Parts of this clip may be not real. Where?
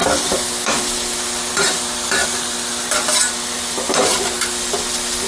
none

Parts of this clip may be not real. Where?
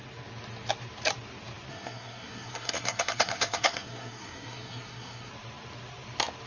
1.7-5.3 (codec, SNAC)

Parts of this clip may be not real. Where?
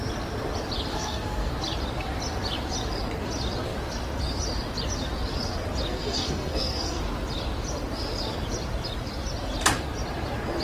0.9-1.5 (codec, SNAC); 5.9-7.0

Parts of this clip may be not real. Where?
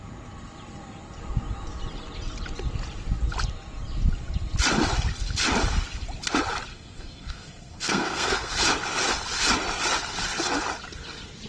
6.7-8.5 (codec, SNAC)